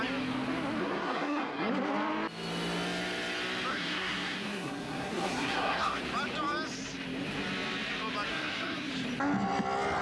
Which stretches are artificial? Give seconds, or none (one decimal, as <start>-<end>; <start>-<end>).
0.8-1.7; 3.7-6.0; 8.3-8.9